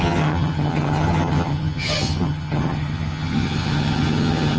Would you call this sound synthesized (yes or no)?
yes